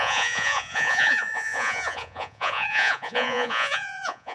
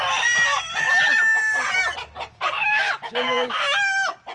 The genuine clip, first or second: second